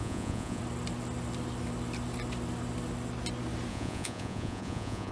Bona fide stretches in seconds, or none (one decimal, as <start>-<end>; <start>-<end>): 0.6-3.7